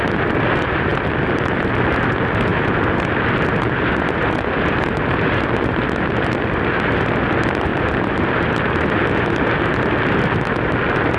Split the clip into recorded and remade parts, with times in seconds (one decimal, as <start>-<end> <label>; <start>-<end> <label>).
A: 0.0-11.2 recorded